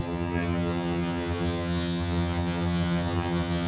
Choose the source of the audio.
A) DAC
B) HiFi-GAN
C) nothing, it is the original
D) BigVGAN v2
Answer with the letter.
B